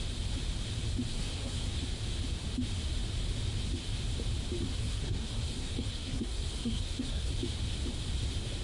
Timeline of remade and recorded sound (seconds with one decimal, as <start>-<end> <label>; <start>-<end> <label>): 0.0-1.1 recorded; 1.1-1.7 remade; 1.7-4.6 recorded; 4.6-7.3 remade; 7.3-8.6 recorded